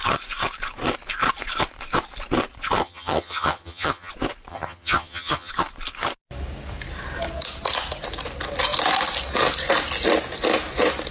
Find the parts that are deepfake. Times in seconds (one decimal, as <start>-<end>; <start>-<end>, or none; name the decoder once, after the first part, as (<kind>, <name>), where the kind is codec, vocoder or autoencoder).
2.8-4.1 (vocoder, HiFi-GAN); 4.5-5.5